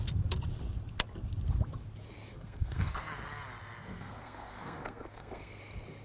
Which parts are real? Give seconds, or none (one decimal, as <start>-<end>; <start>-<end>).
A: 0.0-2.3; 2.9-3.9; 5.6-6.0

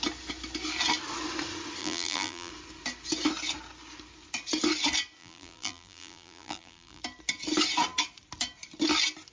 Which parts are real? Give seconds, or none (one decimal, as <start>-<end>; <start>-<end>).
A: 0.0-1.8; 2.5-5.2; 7.0-9.3